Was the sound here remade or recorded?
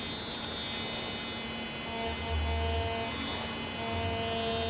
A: recorded